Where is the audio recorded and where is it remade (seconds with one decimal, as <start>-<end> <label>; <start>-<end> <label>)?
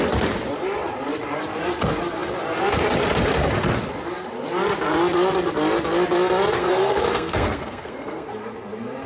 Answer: 0.0-6.6 recorded; 6.6-8.3 remade; 8.3-9.1 recorded